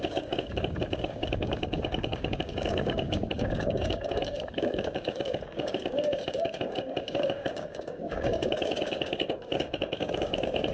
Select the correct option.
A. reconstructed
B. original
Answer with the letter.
A